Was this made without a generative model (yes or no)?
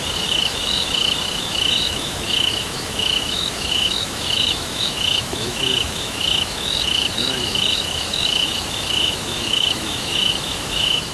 no